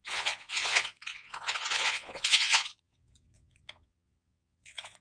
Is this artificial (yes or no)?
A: yes